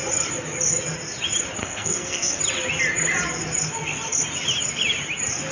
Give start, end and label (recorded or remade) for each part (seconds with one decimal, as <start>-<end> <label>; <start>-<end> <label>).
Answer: 0.0-1.6 recorded; 1.6-2.4 remade; 2.4-5.5 recorded